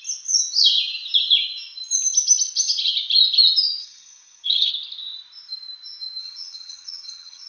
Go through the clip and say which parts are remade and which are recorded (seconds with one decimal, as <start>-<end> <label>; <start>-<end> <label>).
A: 0.0-3.8 recorded; 3.8-4.7 remade; 4.7-6.2 recorded; 6.2-7.5 remade